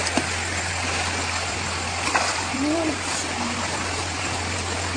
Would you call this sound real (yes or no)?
no